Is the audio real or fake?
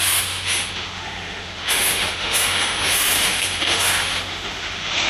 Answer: fake